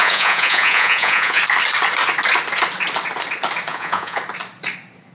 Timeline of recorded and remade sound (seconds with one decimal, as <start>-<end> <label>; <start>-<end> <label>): 0.0-1.4 remade; 1.4-3.7 recorded; 3.7-4.2 remade; 4.2-5.1 recorded